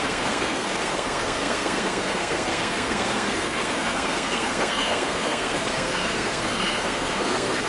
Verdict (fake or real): fake